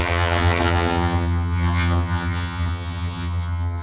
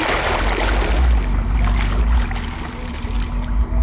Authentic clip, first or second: second